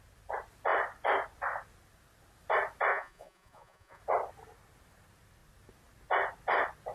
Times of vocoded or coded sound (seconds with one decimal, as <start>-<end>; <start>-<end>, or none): 2.9-4.0